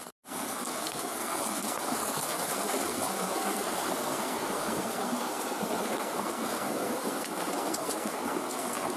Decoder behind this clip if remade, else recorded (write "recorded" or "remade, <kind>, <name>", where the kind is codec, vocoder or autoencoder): remade, codec, SNAC